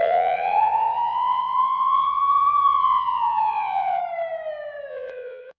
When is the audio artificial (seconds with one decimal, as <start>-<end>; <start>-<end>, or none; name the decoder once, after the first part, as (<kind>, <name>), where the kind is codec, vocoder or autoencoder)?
0.0-4.0 (vocoder, Vocos); 4.9-5.6